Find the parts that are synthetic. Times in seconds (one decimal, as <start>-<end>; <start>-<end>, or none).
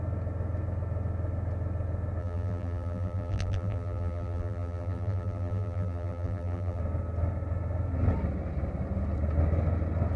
2.2-6.8